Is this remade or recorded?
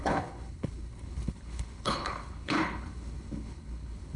remade